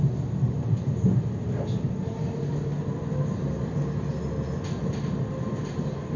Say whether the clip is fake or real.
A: real